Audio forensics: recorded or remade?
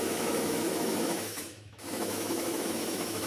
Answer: remade